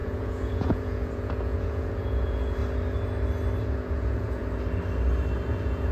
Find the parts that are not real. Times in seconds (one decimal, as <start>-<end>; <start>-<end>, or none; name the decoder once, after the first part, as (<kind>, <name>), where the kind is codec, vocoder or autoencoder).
0.0-2.6 (vocoder, Vocos); 3.6-4.4; 5.5-5.9